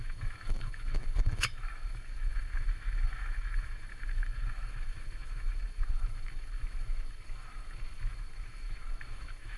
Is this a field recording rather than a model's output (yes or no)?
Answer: no